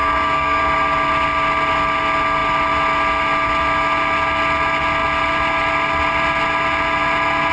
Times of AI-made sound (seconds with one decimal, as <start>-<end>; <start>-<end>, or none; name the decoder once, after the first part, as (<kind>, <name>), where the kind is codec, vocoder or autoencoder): 0.0-0.6 (codec, DAC)